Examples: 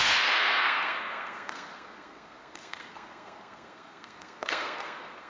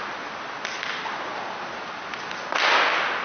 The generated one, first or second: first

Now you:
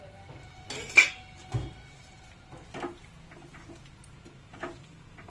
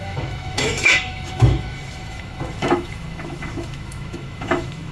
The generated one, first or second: second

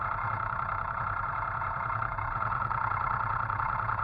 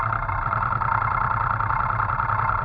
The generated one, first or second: first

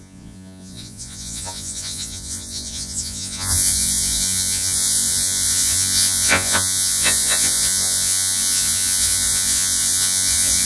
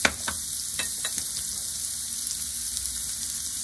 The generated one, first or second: first